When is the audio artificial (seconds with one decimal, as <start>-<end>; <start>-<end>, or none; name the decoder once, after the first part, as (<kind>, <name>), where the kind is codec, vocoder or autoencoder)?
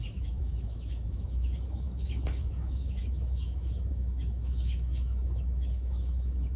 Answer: 0.0-6.6 (autoencoder, DAC-VAE)